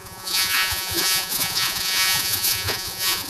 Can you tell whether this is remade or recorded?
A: remade